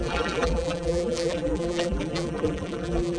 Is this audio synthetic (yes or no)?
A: yes